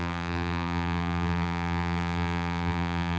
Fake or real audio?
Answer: fake